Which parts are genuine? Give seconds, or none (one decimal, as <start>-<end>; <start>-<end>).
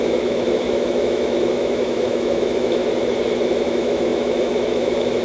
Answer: 2.8-3.6